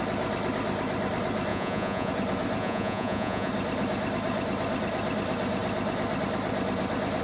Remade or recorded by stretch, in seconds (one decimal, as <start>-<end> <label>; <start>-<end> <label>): 0.0-1.5 recorded; 1.5-2.1 remade; 2.1-2.6 recorded; 2.6-3.5 remade; 3.5-7.2 recorded

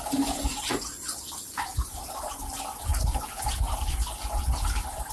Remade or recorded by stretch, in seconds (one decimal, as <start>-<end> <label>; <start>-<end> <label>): 0.0-5.1 recorded

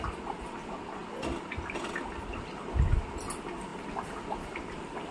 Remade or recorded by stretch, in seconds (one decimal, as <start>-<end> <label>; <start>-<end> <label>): 0.0-5.1 recorded

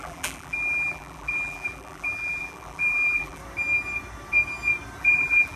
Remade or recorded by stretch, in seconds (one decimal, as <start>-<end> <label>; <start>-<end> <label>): 0.0-3.4 remade; 3.4-5.0 recorded; 5.0-5.6 remade